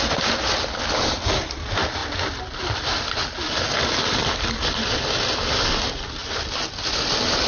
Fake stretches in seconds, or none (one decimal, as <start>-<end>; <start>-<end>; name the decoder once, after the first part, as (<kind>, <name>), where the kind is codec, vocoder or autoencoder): none